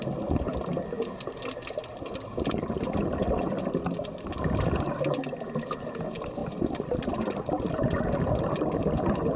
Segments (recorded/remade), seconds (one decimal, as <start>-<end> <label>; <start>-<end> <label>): 0.0-9.4 recorded